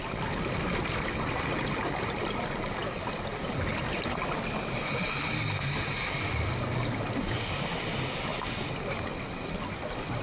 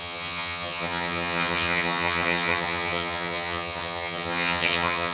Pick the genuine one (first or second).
first